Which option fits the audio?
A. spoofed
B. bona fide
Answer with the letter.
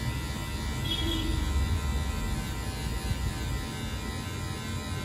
B